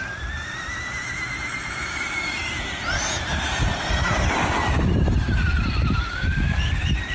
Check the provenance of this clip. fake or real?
fake